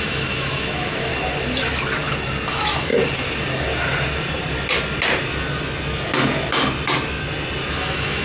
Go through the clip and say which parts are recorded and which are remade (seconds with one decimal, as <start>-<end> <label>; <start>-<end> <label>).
0.0-1.1 remade; 1.1-2.5 recorded; 2.5-2.9 remade; 2.9-7.7 recorded; 7.7-8.2 remade